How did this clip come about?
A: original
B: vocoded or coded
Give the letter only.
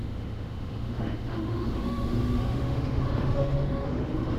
B